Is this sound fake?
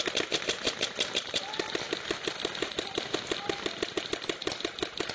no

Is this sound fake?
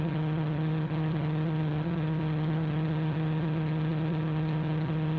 yes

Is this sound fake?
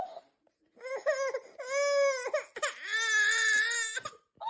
no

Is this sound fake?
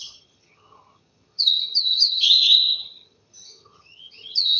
yes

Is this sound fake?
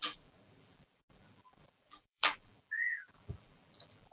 yes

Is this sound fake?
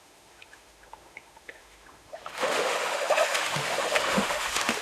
yes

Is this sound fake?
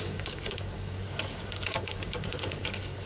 yes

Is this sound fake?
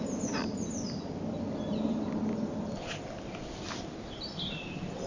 no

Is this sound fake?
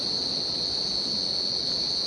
no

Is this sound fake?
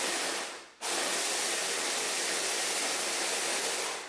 no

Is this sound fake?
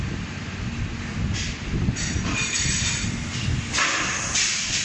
no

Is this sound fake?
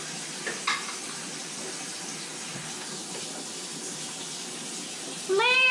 no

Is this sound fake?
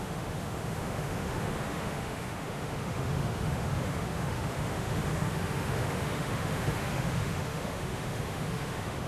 yes